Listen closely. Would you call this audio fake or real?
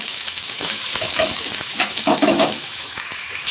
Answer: fake